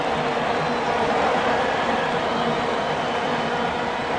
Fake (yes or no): no